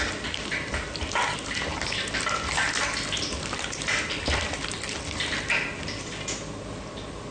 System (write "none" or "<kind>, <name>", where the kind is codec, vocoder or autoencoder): none